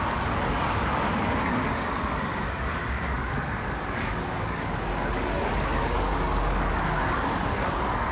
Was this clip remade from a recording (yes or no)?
yes